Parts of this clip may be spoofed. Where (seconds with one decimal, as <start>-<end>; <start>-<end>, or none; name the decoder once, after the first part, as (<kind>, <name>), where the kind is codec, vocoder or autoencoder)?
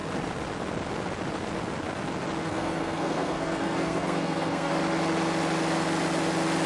2.4-4.7 (codec, SNAC)